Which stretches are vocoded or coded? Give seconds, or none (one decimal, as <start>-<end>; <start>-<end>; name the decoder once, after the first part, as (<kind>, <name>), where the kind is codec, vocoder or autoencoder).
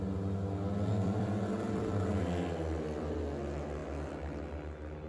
0.9-3.2 (vocoder, BigVGAN v2); 3.8-4.4